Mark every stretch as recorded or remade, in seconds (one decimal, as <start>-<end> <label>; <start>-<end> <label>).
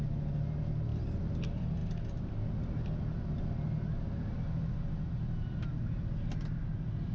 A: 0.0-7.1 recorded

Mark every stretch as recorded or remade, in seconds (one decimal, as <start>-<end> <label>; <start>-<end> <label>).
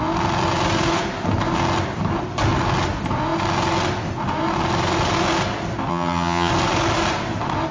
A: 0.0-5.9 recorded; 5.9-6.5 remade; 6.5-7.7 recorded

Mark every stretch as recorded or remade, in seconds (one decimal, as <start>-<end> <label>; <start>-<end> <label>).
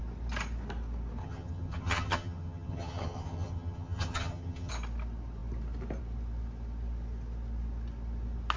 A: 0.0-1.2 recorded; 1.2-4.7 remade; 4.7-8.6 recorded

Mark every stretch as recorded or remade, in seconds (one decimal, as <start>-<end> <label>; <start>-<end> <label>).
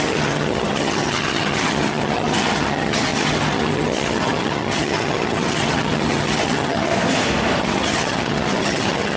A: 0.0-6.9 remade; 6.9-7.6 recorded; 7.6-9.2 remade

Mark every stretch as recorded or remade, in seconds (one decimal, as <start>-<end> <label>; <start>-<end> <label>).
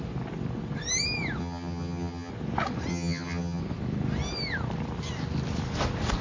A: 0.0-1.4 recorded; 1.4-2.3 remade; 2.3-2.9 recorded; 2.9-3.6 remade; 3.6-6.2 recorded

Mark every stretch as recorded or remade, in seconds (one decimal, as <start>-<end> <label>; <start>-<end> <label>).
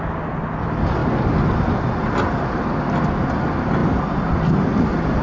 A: 0.0-5.2 recorded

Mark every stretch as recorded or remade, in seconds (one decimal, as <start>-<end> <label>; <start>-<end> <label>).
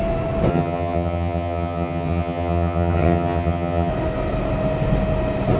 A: 0.0-0.5 recorded; 0.5-3.9 remade; 3.9-5.6 recorded